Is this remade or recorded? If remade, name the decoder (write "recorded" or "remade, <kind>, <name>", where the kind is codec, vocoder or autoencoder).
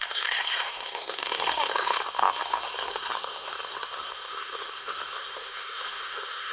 remade, codec, SNAC